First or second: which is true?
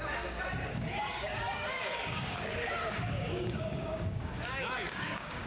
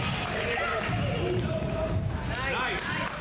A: second